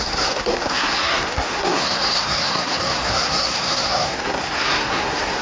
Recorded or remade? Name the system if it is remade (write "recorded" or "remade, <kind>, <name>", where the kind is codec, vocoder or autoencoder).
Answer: remade, codec, SNAC